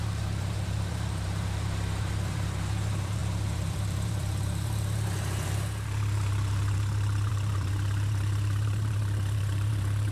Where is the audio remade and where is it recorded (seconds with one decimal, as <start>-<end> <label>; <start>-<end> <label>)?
0.0-10.1 remade